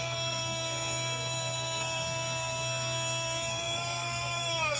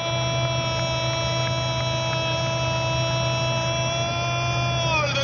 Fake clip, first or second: first